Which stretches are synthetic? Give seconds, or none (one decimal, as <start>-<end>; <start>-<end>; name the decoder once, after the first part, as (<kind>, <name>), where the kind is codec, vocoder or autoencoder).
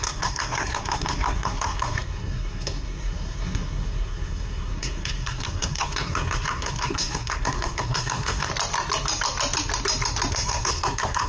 0.0-8.5 (codec, SNAC); 10.3-11.3